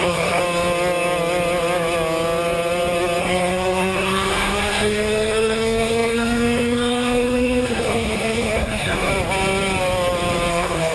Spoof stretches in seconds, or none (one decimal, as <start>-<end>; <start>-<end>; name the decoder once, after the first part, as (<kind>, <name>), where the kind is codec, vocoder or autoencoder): 0.0-0.4 (codec, SNAC); 3.2-9.1; 10.5-10.9